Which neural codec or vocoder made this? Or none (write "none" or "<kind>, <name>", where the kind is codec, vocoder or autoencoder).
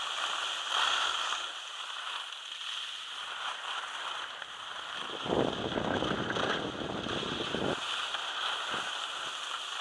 none